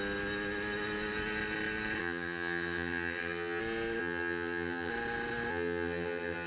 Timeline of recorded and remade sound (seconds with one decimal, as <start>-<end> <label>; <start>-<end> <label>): 0.0-2.0 recorded; 2.0-3.6 remade; 3.6-4.0 recorded; 4.0-4.9 remade; 4.9-5.5 recorded; 5.5-6.5 remade